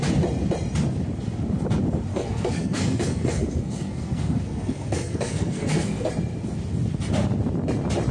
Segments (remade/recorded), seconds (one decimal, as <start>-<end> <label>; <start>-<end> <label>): 0.0-2.1 recorded; 2.1-6.1 remade; 6.1-8.1 recorded